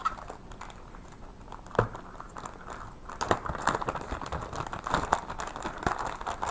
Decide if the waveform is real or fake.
real